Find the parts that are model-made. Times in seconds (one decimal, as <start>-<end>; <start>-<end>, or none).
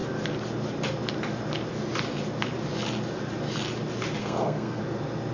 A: 4.2-4.8